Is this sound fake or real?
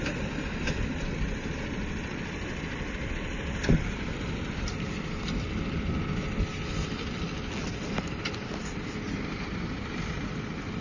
real